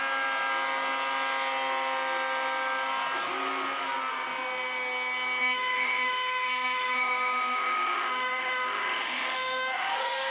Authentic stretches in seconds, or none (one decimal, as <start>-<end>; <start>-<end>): 0.0-5.4